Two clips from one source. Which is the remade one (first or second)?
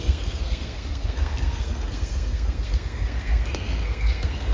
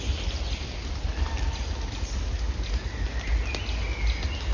first